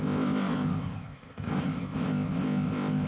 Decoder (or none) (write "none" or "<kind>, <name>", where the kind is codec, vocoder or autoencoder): codec, ZipCodec